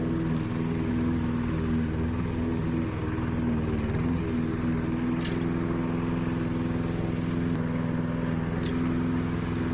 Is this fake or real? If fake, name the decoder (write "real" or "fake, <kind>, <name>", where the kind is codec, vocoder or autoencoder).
real